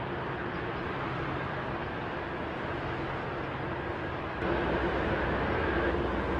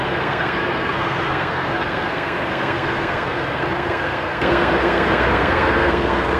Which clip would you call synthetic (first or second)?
second